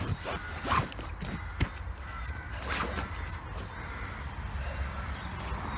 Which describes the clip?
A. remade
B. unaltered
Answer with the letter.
B